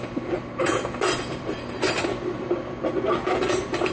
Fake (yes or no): no